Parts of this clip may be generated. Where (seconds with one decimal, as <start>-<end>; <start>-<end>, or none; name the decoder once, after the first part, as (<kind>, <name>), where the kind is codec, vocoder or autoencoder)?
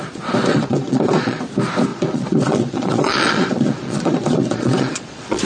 0.5-1.4 (vocoder, Vocos); 1.9-5.4